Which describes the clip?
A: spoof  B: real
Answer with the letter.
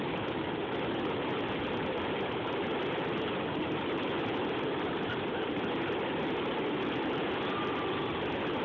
B